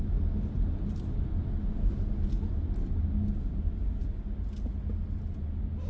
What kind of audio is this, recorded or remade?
recorded